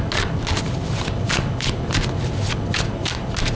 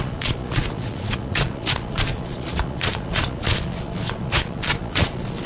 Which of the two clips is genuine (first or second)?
first